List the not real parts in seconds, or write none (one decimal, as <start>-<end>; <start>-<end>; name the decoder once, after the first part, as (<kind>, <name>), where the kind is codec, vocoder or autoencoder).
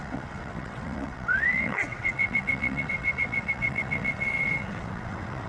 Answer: 0.0-5.5 (vocoder, WaveNeXt)